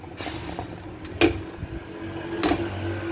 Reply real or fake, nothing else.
real